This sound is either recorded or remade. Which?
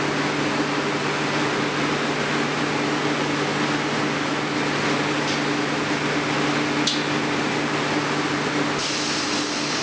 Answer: recorded